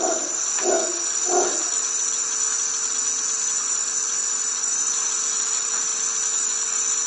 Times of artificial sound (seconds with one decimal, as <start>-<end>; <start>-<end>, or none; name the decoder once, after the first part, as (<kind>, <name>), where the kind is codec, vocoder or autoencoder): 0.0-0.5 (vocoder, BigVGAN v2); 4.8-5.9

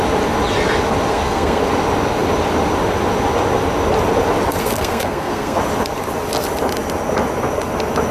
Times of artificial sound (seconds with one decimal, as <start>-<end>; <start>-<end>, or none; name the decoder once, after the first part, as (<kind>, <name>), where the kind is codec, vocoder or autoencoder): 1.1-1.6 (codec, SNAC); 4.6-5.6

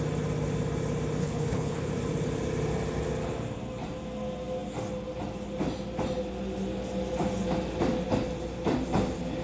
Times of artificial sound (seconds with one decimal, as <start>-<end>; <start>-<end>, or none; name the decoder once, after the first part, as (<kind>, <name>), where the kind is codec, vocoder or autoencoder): 1.2-1.9 (codec, HILCodec)

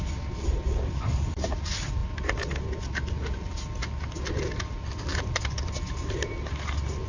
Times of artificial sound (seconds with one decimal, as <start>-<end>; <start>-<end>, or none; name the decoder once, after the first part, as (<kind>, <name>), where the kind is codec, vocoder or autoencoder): none